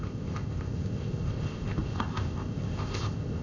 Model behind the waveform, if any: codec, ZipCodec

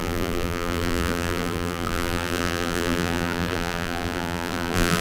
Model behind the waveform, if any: vocoder, BigVGAN v2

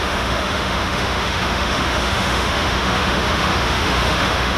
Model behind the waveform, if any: autoencoder, DAC-VAE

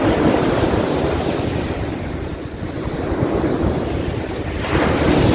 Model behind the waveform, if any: none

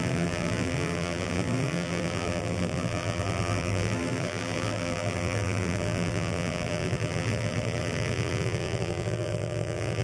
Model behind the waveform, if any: vocoder, BigVGAN v2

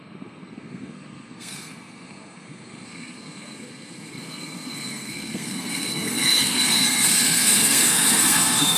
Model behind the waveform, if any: codec, SNAC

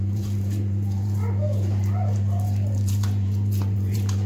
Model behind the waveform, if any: vocoder, BigVGAN v2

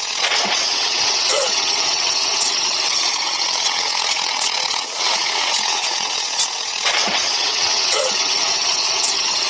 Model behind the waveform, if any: vocoder, WaveNeXt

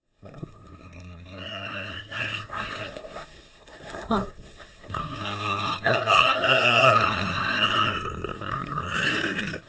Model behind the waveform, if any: codec, SNAC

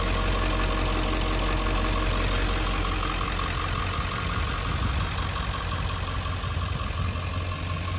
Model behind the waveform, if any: none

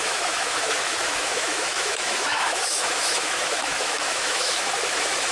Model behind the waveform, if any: autoencoder, DAC-VAE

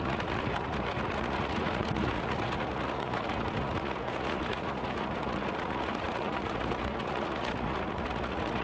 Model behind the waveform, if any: vocoder, Vocos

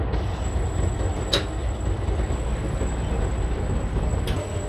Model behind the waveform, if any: none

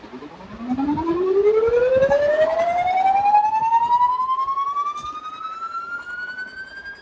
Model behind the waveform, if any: none